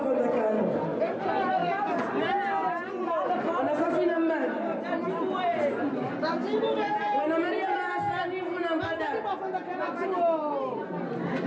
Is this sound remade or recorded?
recorded